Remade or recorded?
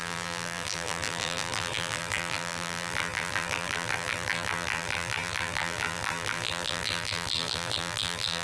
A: remade